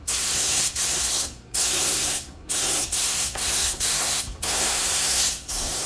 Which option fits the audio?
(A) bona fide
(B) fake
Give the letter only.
B